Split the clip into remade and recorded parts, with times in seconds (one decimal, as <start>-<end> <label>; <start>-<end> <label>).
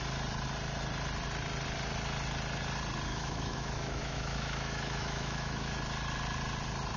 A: 0.0-3.1 recorded; 3.1-5.7 remade; 5.7-7.0 recorded